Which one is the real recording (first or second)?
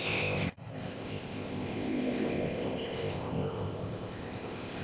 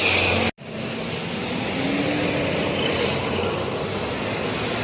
second